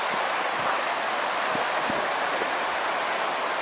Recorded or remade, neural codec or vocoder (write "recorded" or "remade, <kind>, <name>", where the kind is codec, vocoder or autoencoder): recorded